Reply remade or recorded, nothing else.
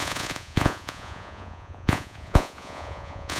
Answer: remade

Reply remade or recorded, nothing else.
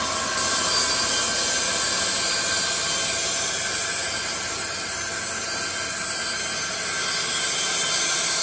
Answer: recorded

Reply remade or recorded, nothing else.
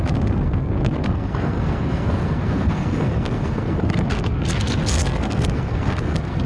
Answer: remade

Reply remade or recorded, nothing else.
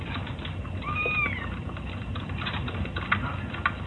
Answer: recorded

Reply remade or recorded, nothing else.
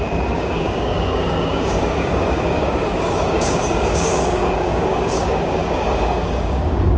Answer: remade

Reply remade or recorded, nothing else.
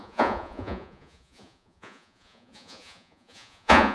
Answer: remade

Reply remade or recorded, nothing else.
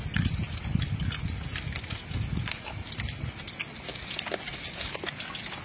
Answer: recorded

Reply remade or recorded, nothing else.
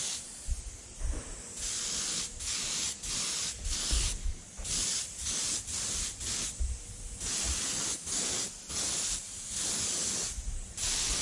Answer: recorded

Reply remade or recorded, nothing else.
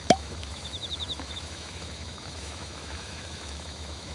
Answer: remade